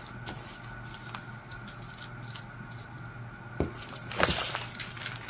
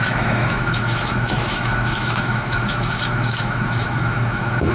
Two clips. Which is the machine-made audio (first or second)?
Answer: second